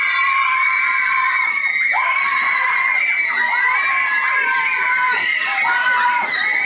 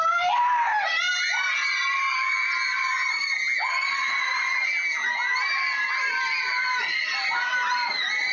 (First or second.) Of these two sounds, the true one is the second